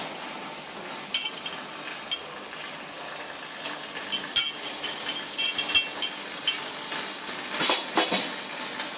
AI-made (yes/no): no